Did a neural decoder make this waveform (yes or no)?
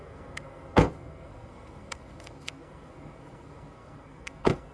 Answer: yes